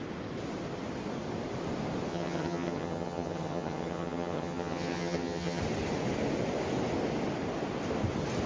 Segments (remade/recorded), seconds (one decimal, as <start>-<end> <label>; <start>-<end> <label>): 0.0-2.1 recorded; 2.1-5.6 remade; 5.6-8.5 recorded